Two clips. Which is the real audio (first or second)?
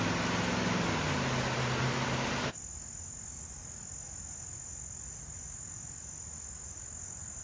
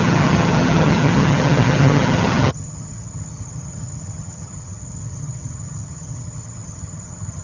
first